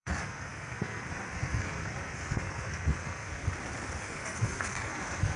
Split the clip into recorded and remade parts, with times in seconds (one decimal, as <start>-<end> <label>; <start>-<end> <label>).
0.0-3.5 remade; 3.5-4.0 recorded; 4.0-5.4 remade

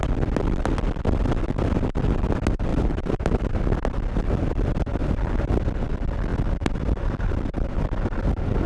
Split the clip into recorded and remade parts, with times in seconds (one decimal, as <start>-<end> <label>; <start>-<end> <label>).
0.0-2.7 recorded; 2.7-3.6 remade; 3.6-5.0 recorded; 5.0-5.5 remade; 5.5-8.7 recorded

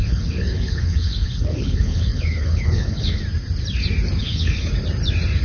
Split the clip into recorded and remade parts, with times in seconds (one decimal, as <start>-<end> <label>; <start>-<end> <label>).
0.0-3.2 remade; 3.2-4.2 recorded; 4.2-4.7 remade; 4.7-5.4 recorded

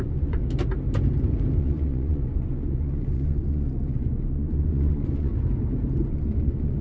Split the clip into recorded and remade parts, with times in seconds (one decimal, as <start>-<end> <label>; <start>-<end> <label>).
0.0-0.4 remade; 0.4-1.6 recorded; 1.6-5.3 remade; 5.3-6.1 recorded; 6.1-6.8 remade

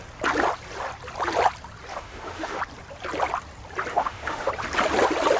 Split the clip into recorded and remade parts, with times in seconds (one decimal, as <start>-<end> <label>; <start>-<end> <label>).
0.0-1.9 recorded; 1.9-2.6 remade; 2.6-3.9 recorded; 3.9-4.5 remade; 4.5-5.4 recorded